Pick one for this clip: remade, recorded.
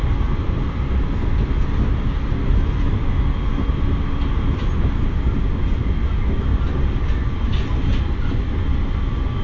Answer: recorded